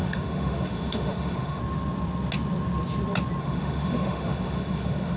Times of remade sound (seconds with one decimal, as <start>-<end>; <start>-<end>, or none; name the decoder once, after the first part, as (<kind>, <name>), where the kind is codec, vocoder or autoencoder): 0.0-1.6 (autoencoder, DAC-VAE); 3.4-5.2